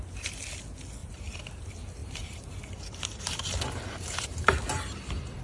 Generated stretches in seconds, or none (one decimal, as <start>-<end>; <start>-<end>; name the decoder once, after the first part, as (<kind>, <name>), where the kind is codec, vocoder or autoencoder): 1.0-1.6 (vocoder, BigVGAN v2); 2.0-5.4